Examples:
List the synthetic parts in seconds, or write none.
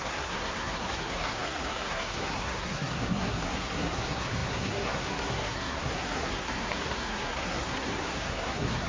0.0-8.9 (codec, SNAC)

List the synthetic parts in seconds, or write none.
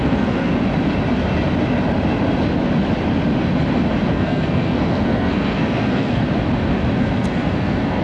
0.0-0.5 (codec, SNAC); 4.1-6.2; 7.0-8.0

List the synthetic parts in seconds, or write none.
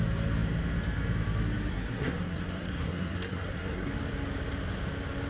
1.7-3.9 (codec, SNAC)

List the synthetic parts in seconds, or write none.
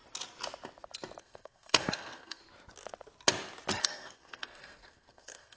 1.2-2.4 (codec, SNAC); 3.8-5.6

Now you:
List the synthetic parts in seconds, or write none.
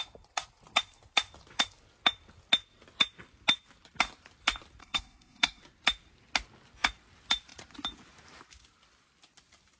4.8-5.6 (codec, SNAC)